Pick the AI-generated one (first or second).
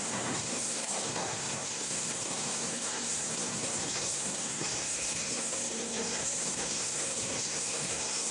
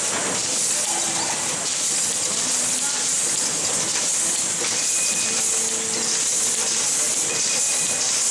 first